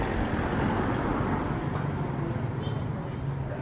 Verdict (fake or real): real